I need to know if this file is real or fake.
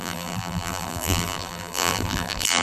fake